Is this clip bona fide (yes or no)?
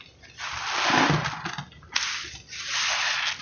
yes